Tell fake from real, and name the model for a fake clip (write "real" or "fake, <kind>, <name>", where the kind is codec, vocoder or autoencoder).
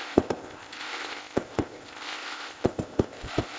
fake, codec, ZipCodec